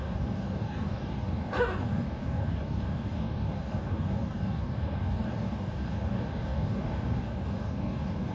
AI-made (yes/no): yes